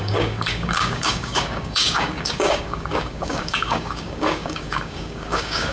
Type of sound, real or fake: fake